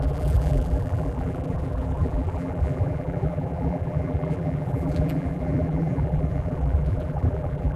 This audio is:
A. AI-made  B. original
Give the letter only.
A